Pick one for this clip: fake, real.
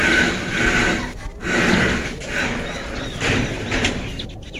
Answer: real